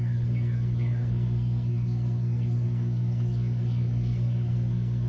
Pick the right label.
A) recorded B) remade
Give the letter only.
B